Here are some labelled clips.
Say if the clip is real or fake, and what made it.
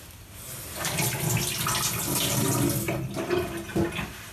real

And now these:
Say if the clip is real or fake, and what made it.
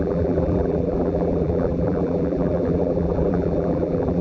fake, vocoder, BigVGAN v2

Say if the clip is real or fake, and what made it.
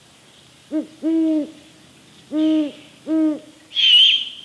real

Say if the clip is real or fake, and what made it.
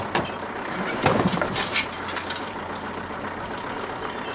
real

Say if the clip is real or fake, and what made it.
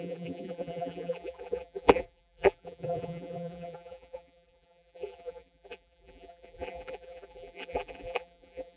fake, vocoder, BigVGAN v2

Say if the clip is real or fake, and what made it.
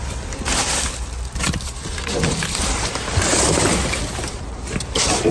fake, vocoder, BigVGAN v2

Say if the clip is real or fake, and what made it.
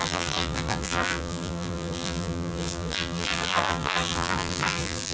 fake, vocoder, BigVGAN v2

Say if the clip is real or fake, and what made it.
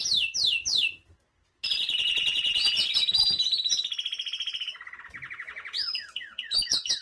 real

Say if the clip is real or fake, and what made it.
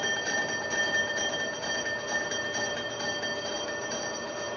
real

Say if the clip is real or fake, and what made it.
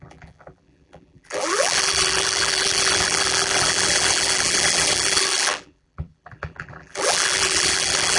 fake, vocoder, BigVGAN v2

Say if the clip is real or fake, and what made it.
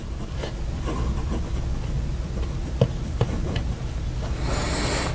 real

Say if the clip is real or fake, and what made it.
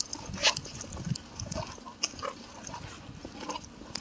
real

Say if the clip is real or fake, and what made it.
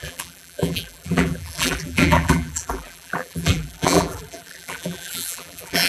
fake, vocoder, BigVGAN v2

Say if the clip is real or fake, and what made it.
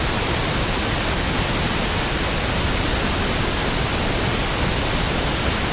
real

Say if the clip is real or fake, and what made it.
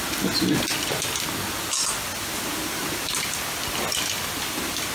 real